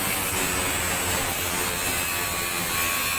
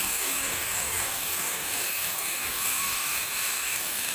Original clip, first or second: first